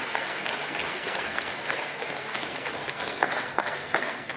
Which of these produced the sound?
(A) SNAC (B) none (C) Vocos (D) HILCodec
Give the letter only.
A